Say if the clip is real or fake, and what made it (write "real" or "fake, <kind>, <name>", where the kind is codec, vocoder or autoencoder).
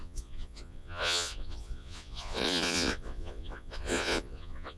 fake, vocoder, Vocos